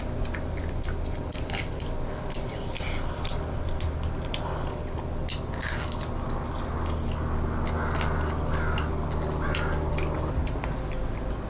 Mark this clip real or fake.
real